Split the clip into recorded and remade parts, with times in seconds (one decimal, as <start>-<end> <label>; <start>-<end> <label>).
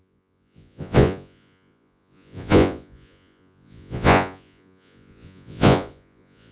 0.0-6.5 remade